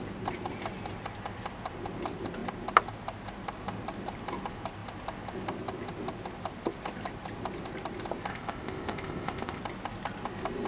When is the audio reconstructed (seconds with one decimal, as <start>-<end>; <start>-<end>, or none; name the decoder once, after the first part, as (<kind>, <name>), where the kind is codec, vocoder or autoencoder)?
8.3-9.6 (codec, ZipCodec)